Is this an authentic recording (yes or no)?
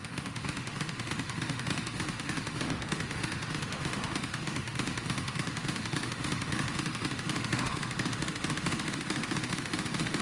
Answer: no